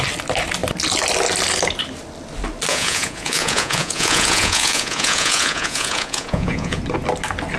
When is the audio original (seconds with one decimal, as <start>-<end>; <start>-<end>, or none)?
0.0-2.7; 6.8-7.6